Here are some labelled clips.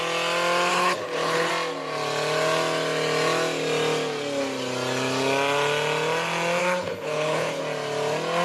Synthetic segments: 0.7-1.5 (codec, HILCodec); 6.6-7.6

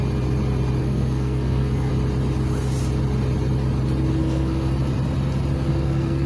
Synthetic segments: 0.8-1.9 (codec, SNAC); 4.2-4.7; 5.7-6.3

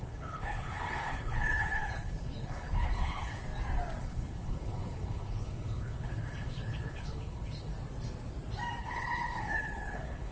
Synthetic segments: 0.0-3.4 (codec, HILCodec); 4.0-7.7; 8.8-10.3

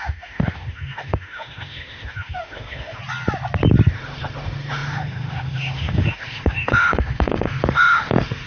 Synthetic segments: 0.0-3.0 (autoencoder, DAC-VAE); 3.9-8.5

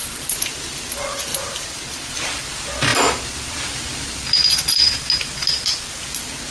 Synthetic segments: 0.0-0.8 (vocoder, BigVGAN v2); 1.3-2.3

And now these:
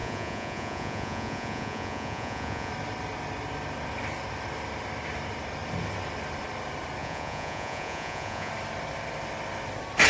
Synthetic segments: 0.0-2.7 (vocoder, Vocos); 7.0-8.5

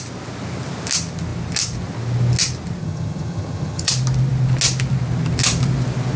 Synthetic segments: 2.8-3.9 (vocoder, HiFi-GAN)

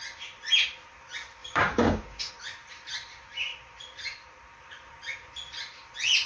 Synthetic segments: 1.4-2.3 (codec, DAC)